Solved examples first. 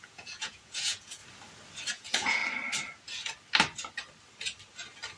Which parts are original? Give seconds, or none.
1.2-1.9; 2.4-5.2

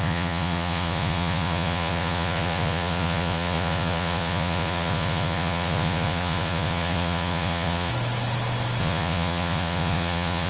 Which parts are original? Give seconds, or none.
7.9-8.8

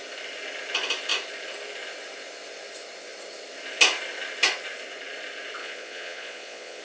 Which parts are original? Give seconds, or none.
0.0-5.6

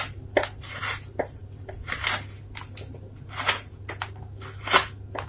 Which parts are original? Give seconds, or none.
0.0-5.3